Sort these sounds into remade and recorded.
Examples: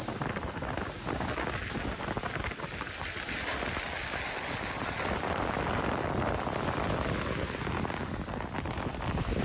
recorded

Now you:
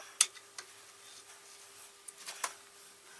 recorded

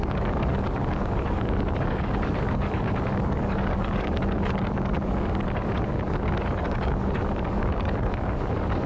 remade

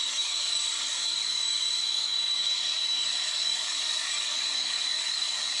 remade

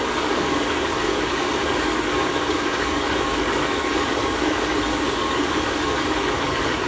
remade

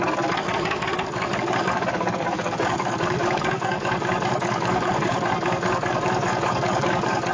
remade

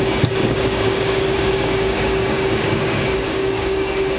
remade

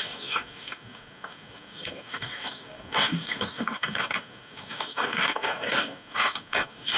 remade